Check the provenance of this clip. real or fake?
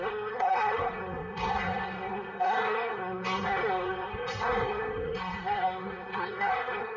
fake